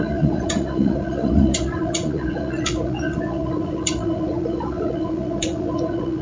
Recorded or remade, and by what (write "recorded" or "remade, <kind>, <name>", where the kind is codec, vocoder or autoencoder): remade, vocoder, Vocos